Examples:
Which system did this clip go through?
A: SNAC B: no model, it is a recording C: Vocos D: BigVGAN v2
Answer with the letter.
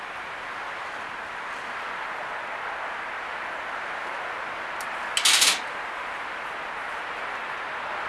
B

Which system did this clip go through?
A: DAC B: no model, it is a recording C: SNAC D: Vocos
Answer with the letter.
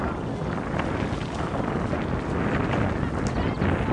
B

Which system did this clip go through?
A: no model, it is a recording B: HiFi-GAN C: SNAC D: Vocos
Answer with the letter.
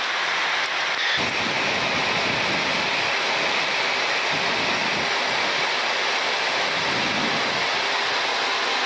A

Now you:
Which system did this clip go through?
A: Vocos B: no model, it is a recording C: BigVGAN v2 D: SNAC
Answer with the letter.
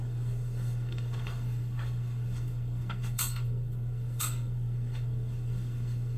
D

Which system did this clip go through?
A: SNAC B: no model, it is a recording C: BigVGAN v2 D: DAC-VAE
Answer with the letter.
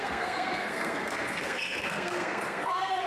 A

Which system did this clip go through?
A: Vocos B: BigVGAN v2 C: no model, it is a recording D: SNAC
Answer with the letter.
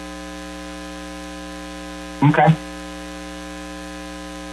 C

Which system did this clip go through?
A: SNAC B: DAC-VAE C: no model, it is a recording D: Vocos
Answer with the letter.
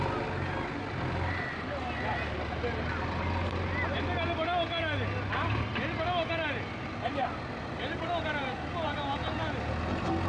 C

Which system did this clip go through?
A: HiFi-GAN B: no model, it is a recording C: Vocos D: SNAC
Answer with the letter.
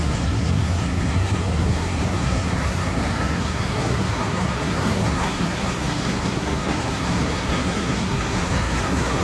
D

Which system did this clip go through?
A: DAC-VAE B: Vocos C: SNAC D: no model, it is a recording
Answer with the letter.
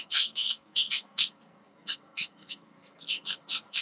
C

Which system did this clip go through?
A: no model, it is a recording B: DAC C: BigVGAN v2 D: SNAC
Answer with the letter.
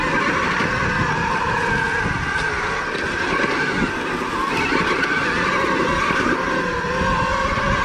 A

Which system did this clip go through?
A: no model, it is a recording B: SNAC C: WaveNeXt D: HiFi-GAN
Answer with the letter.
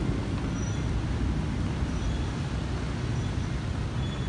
A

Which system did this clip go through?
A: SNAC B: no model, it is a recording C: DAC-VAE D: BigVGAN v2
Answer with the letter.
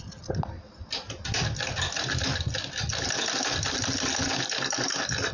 B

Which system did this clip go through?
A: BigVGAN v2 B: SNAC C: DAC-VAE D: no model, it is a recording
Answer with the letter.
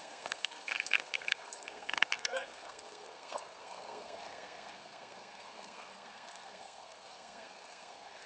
B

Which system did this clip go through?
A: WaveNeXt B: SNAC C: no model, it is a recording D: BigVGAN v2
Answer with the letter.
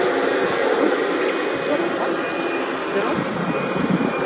C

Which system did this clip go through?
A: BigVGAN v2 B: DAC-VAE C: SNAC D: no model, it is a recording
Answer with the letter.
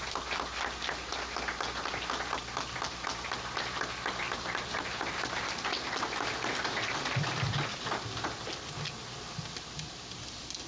D